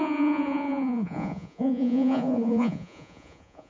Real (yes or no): no